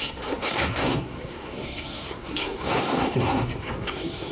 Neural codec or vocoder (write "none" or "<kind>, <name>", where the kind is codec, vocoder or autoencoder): codec, SNAC